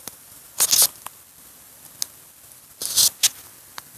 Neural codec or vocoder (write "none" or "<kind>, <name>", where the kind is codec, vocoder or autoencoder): none